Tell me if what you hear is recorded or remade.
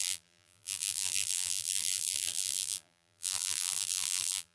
remade